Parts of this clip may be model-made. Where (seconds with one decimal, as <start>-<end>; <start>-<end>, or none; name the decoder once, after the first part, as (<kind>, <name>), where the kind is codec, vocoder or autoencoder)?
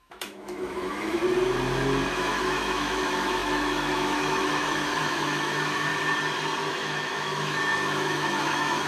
0.0-1.2 (autoencoder, DAC-VAE); 2.1-5.9; 6.7-8.9